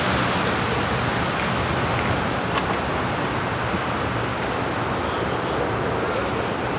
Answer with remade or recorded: recorded